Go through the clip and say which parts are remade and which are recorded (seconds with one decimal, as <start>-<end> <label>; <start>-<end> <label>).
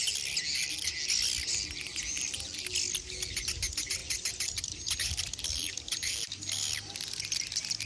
0.0-7.8 recorded